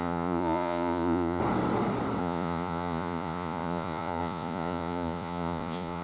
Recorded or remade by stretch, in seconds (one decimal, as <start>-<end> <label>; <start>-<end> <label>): 0.0-1.4 remade; 1.4-2.2 recorded; 2.2-6.0 remade